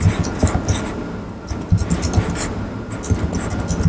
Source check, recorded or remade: recorded